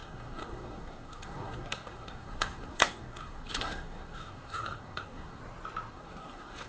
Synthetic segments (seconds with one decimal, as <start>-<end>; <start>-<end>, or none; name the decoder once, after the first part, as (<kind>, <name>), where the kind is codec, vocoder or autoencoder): 0.0-5.4 (codec, SNAC); 5.9-6.7